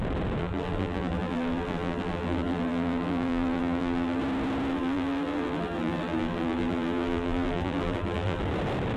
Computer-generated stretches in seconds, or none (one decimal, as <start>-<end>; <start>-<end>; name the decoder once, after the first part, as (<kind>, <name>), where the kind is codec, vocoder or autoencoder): 0.4-4.2 (vocoder, BigVGAN v2); 4.7-8.4